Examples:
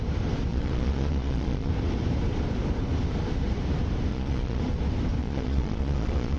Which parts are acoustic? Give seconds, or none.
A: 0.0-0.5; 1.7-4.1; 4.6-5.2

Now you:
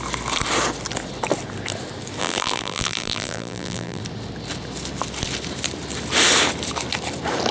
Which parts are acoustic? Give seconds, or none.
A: 0.0-2.2; 4.0-7.5

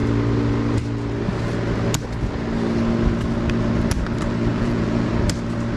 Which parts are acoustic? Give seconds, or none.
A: 0.0-4.5; 5.1-5.8

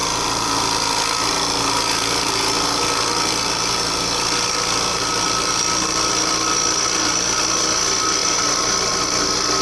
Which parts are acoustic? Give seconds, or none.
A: 0.0-9.6

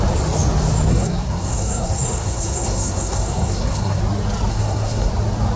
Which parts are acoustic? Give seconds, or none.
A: 0.0-0.9; 4.0-4.5; 5.1-5.6

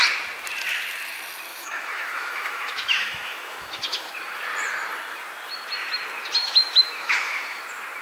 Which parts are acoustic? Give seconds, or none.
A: 0.0-1.5; 4.1-6.4; 7.6-8.0